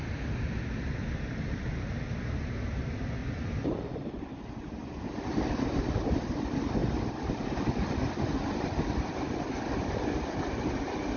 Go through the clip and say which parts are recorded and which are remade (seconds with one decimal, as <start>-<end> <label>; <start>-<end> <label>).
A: 0.0-1.3 recorded; 1.3-2.0 remade; 2.0-3.2 recorded; 3.2-4.3 remade; 4.3-11.2 recorded

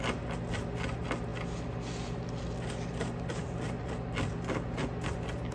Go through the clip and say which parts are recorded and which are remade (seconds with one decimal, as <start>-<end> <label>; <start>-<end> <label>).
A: 0.0-5.5 recorded

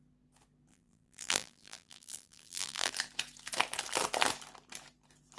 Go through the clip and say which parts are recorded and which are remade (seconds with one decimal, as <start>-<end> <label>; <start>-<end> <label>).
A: 0.0-0.7 recorded; 0.7-2.9 remade; 2.9-5.4 recorded

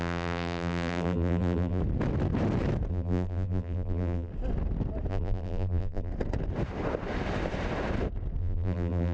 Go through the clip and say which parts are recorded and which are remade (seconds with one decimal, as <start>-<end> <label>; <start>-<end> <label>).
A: 0.0-1.8 remade; 1.8-2.9 recorded; 2.9-4.3 remade; 4.3-5.1 recorded; 5.1-6.1 remade; 6.1-8.4 recorded; 8.4-9.1 remade

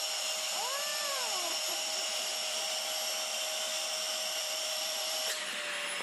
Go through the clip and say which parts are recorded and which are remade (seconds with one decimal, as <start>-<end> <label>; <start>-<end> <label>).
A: 0.0-0.9 recorded; 0.9-2.7 remade; 2.7-4.4 recorded; 4.4-5.5 remade; 5.5-6.0 recorded